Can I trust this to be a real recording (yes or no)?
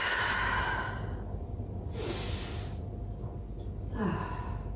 yes